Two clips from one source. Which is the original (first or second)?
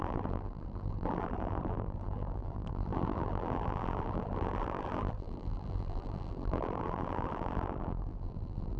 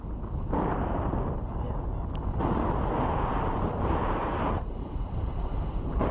second